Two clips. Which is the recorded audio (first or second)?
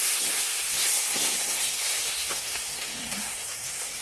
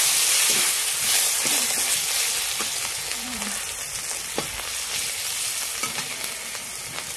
second